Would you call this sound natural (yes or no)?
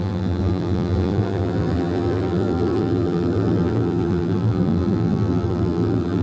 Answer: no